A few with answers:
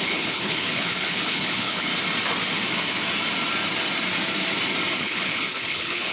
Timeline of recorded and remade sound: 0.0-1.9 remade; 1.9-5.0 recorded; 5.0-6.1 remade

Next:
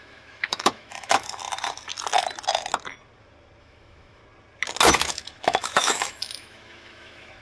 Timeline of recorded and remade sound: 0.0-1.4 remade; 1.4-3.6 recorded; 3.6-4.2 remade; 4.2-4.9 recorded; 4.9-7.4 remade